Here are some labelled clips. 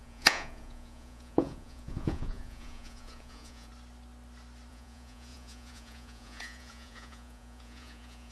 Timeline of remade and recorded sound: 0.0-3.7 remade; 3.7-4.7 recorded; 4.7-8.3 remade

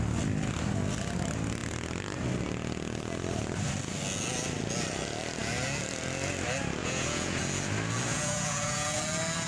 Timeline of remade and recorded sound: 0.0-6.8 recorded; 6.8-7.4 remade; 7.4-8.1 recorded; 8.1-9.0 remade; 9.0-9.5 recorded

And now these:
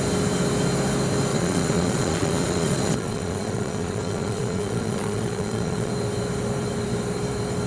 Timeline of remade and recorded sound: 0.0-1.3 recorded; 1.3-5.9 remade; 5.9-7.7 recorded